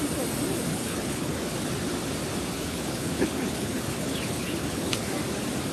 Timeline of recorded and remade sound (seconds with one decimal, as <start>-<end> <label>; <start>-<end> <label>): 0.0-0.7 recorded; 0.7-1.7 remade; 1.7-2.5 recorded; 2.5-5.1 remade; 5.1-5.7 recorded